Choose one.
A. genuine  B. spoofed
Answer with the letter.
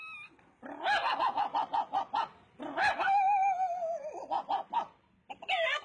A